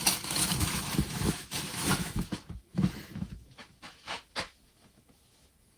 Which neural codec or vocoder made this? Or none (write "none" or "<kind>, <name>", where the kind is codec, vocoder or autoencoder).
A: autoencoder, DAC-VAE